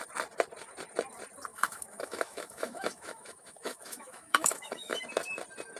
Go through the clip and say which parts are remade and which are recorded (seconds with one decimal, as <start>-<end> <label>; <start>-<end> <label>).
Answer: 0.0-1.5 recorded; 1.5-5.0 remade; 5.0-5.8 recorded